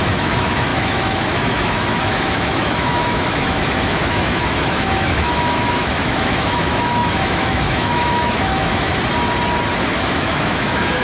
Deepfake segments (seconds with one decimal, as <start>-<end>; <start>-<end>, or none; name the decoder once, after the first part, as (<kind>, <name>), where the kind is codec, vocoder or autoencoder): 0.0-8.9 (autoencoder, DAC-VAE); 9.8-11.0